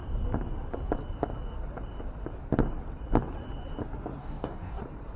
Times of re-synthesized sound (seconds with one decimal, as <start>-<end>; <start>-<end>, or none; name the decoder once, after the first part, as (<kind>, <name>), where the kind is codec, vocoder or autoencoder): 4.2-4.8 (codec, DAC)